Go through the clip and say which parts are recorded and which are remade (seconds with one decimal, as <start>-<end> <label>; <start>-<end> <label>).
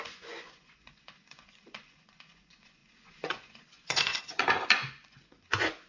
0.0-5.9 remade